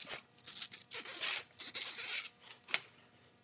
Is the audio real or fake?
real